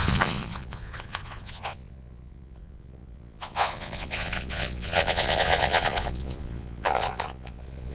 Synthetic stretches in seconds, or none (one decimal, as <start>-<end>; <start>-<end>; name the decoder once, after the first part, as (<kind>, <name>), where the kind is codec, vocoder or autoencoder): 0.0-7.9 (vocoder, Vocos)